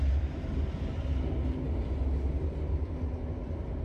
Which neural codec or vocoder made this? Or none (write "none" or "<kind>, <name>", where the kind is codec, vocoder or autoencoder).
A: none